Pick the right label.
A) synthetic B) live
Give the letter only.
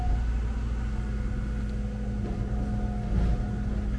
B